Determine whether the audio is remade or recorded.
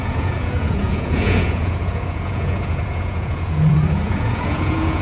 remade